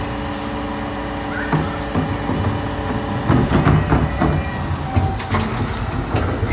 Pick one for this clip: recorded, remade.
recorded